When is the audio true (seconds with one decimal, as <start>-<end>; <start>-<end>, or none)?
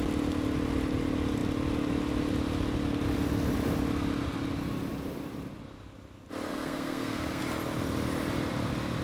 0.0-6.5; 7.4-9.0